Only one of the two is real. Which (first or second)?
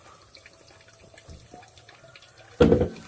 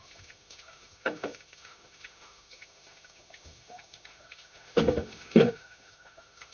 first